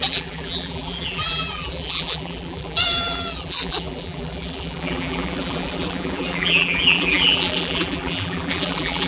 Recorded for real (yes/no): no